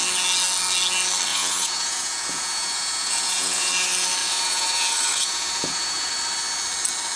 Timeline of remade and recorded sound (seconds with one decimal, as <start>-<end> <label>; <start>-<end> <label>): 0.0-1.3 recorded; 1.3-3.7 remade; 3.7-4.2 recorded; 4.2-6.1 remade; 6.1-7.2 recorded

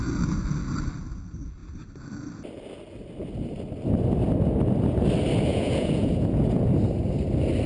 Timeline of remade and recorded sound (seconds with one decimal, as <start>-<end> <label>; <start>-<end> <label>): 0.0-5.5 recorded; 5.5-6.7 remade; 6.7-7.7 recorded

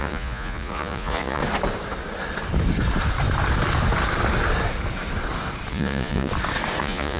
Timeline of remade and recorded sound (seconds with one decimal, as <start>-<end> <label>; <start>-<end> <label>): 0.0-1.4 remade; 1.4-5.7 recorded; 5.7-6.3 remade; 6.3-6.8 recorded; 6.8-7.2 remade

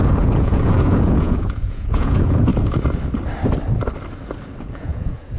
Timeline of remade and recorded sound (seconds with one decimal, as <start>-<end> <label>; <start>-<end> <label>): 0.0-2.5 remade; 2.5-4.6 recorded; 4.6-5.4 remade

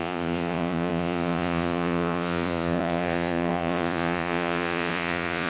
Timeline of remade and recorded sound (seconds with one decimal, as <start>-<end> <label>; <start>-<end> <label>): 0.0-5.5 remade

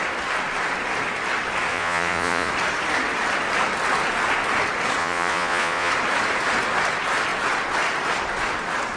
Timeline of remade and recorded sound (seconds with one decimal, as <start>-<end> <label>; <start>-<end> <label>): 0.0-1.7 recorded; 1.7-2.5 remade; 2.5-5.0 recorded; 5.0-5.9 remade; 5.9-9.0 recorded